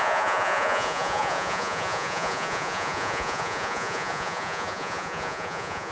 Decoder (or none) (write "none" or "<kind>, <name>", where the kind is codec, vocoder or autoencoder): vocoder, Vocos